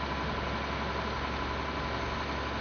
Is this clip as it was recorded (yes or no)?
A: yes